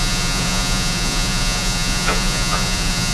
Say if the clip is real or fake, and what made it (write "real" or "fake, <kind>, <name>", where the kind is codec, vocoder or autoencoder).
fake, vocoder, Vocos